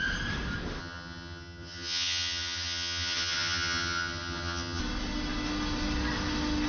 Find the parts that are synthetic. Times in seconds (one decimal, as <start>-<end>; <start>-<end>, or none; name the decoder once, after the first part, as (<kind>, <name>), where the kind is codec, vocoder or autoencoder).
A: 0.8-4.8 (vocoder, HiFi-GAN)